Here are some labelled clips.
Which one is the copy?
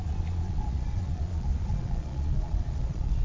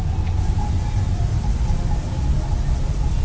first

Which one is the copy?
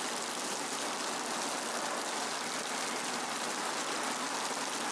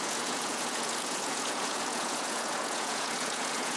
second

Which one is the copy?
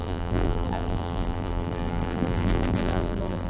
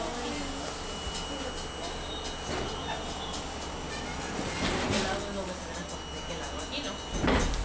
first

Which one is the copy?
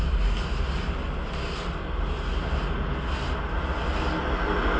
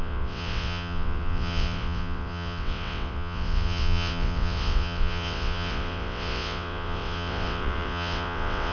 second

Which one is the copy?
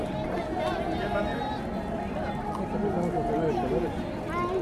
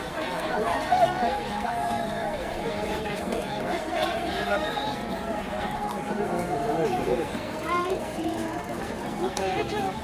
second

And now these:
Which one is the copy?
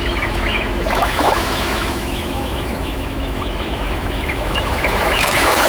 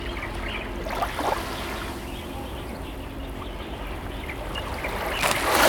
first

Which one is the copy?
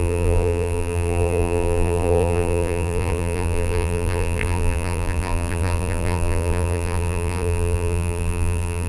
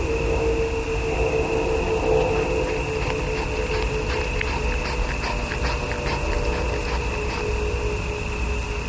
first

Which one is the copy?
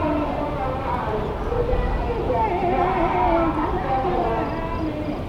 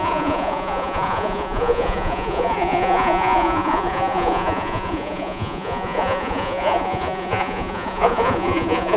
second